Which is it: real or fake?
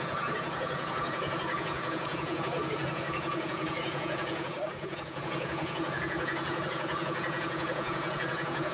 fake